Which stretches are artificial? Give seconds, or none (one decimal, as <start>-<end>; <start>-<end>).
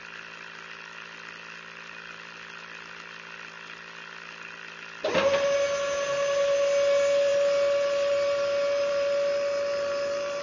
none